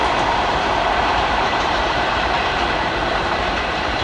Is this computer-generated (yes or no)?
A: yes